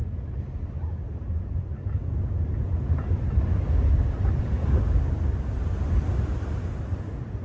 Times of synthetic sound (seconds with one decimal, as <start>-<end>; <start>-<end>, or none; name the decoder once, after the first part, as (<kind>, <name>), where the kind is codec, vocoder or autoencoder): none